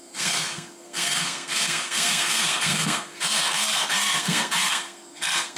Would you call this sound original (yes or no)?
no